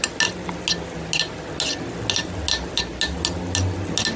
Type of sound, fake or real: real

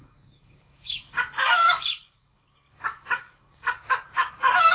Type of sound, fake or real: fake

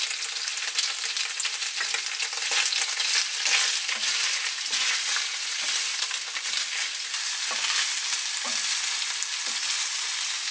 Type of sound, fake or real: real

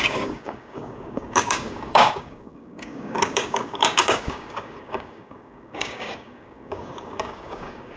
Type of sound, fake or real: fake